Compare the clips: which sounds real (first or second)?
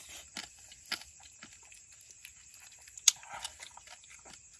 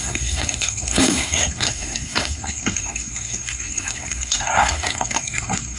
first